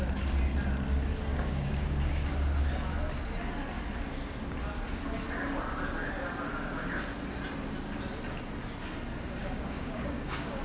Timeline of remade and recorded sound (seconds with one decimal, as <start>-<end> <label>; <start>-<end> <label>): 0.0-1.3 recorded; 1.3-2.3 remade; 2.3-9.4 recorded; 9.4-10.6 remade

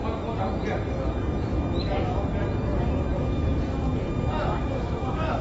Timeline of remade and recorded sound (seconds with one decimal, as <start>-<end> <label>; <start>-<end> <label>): 0.0-4.6 recorded; 4.6-5.4 remade

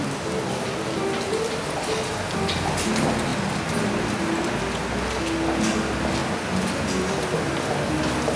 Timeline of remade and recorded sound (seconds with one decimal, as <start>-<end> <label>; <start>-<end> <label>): 0.0-8.4 recorded

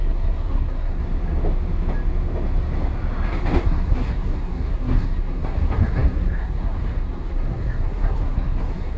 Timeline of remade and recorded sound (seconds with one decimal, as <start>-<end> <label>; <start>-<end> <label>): 0.0-1.0 remade; 1.0-3.6 recorded; 3.6-9.0 remade

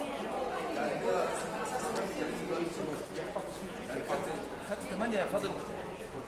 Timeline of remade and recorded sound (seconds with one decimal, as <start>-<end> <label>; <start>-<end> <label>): 0.0-2.6 recorded; 2.6-6.3 remade

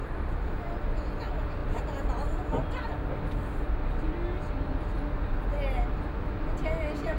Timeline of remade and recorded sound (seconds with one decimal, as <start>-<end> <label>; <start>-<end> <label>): 0.0-7.2 recorded